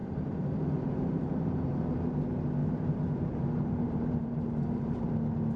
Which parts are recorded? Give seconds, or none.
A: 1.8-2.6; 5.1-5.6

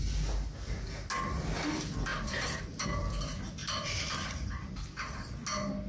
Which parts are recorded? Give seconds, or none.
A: 0.0-2.1; 2.6-3.6; 4.7-5.9

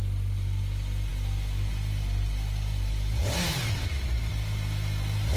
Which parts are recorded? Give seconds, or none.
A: 0.0-5.4

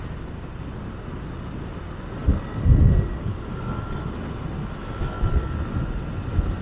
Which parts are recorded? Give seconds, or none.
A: 0.0-6.6